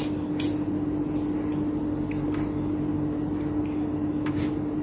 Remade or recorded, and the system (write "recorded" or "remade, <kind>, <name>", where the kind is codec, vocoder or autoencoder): recorded